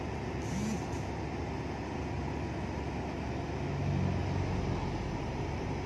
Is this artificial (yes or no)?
no